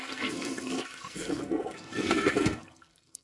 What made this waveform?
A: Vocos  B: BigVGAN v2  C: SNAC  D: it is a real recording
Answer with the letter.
C